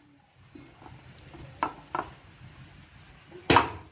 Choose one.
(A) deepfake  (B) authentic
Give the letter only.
B